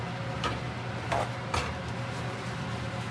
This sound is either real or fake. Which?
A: real